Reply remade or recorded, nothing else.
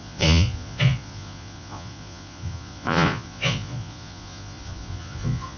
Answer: remade